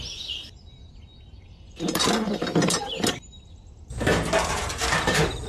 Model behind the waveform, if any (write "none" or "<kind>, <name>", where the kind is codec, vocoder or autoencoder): none